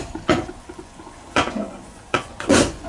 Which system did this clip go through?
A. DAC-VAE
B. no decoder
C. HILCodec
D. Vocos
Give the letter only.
D